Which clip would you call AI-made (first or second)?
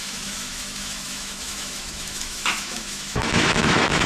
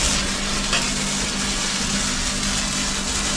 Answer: first